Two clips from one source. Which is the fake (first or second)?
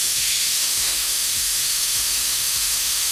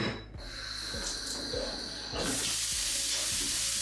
first